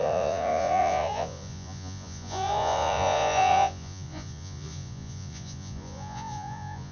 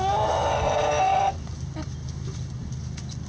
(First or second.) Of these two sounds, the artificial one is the first